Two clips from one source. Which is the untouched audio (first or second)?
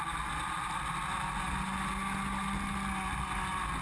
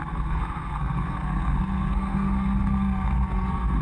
first